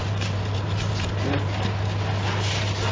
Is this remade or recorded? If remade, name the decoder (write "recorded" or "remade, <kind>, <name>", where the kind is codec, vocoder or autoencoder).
recorded